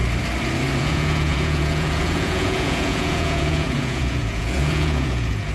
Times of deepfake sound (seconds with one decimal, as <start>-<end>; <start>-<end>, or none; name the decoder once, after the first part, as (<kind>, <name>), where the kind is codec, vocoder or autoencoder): 0.8-5.5 (vocoder, Vocos)